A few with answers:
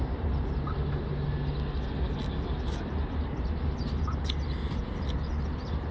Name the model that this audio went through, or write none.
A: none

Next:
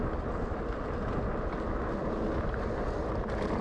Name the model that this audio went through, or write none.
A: none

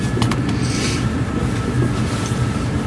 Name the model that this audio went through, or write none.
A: none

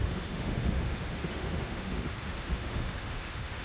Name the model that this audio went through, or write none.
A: autoencoder, DAC-VAE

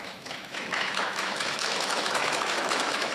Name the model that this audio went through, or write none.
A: autoencoder, DAC-VAE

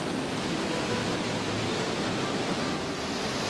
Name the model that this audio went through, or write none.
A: none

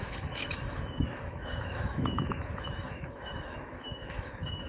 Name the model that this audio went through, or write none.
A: autoencoder, DAC-VAE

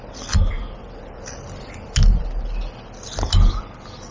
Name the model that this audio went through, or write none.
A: none